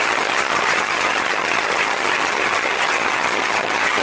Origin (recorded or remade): remade